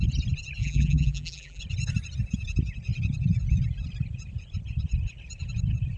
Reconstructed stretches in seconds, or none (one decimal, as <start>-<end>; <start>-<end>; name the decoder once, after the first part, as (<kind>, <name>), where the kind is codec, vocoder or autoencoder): 0.6-1.6 (vocoder, BigVGAN v2)